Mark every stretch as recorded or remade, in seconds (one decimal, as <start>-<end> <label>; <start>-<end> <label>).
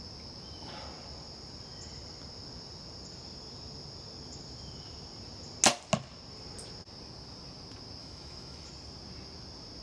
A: 0.0-8.0 recorded; 8.0-8.7 remade; 8.7-9.8 recorded